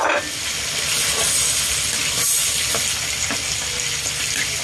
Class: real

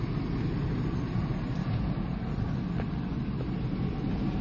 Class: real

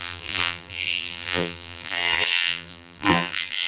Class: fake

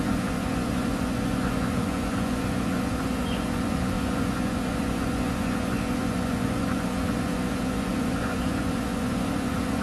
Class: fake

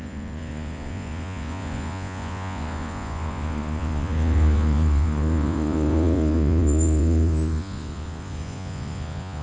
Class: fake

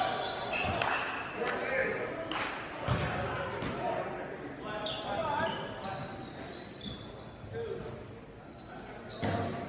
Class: real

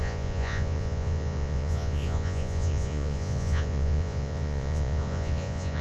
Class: fake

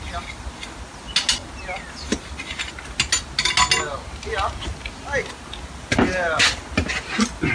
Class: real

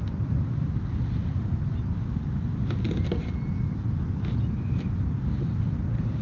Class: real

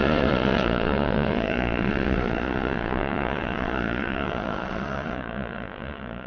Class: fake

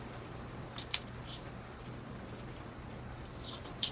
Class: real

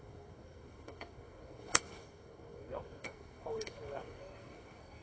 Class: fake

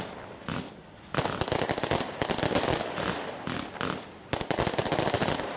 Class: real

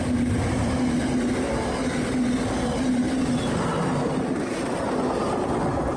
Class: real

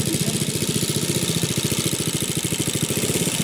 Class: real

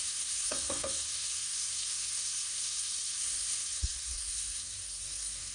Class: fake